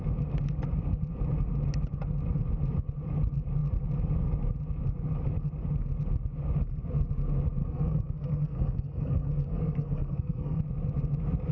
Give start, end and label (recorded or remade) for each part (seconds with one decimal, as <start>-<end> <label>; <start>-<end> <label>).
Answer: 0.0-7.6 recorded; 7.6-10.6 remade; 10.6-11.5 recorded